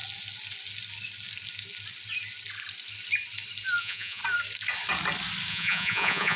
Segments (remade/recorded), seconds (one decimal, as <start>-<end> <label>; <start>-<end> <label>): 0.0-3.8 recorded; 3.8-4.2 remade; 4.2-5.5 recorded; 5.5-6.4 remade